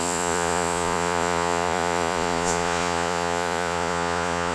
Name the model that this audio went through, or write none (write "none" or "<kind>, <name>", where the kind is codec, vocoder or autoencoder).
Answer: vocoder, Vocos